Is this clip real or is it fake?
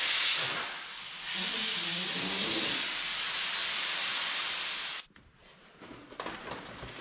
real